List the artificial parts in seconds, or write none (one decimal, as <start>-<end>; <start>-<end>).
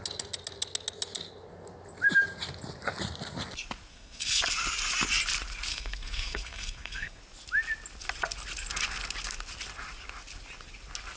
3.9-4.4; 5.7-7.2